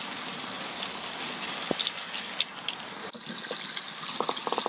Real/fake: real